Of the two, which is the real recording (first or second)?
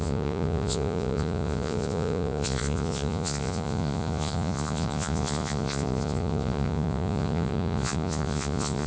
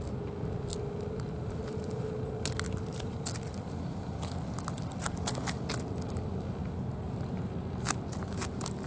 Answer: second